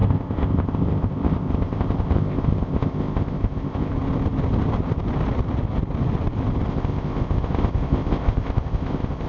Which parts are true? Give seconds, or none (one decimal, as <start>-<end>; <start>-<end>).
3.9-6.7